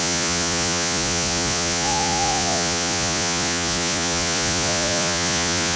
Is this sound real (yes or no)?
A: no